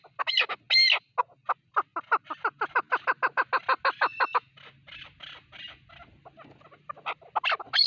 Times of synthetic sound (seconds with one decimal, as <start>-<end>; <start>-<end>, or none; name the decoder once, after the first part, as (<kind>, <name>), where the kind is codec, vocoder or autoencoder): none